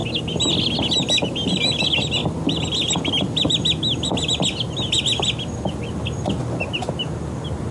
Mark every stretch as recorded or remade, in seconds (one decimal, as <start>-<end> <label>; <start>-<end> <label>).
0.0-7.7 recorded